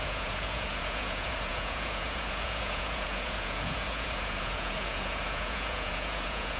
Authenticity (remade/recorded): remade